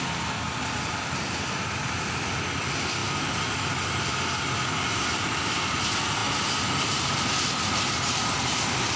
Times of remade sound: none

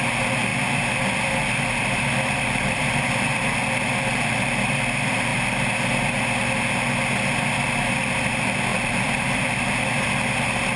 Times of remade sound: 0.5-4.4 (vocoder, BigVGAN v2); 8.7-9.8

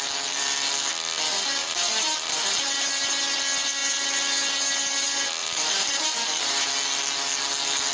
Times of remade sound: 1.6-2.6 (vocoder, BigVGAN v2); 5.4-6.7

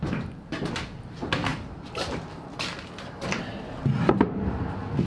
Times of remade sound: 1.5-2.4 (vocoder, BigVGAN v2)

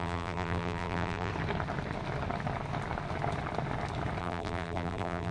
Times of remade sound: 0.0-1.3 (vocoder, BigVGAN v2); 4.2-5.3